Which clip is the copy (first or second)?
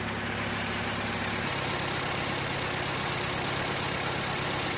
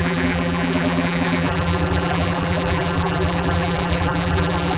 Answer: second